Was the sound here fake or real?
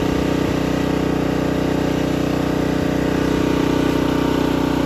real